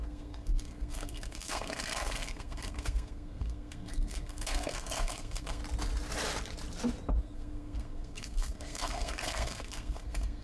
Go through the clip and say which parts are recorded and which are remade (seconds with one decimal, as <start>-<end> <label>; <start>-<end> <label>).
0.0-5.6 remade; 5.6-7.2 recorded; 7.2-10.4 remade